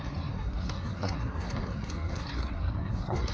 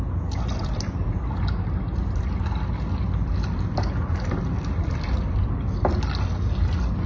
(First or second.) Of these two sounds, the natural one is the second